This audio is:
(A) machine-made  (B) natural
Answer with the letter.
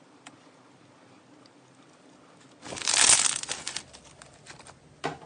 B